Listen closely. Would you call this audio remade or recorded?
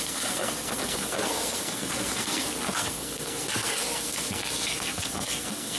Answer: remade